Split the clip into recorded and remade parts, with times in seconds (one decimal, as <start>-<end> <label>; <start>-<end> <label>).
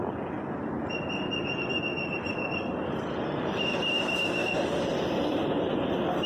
0.0-4.4 recorded; 4.4-4.9 remade; 4.9-6.3 recorded